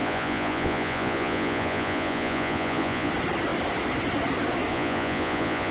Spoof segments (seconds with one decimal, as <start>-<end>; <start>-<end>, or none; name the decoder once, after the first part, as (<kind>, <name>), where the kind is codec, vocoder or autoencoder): 0.0-3.1 (vocoder, Vocos); 4.7-5.7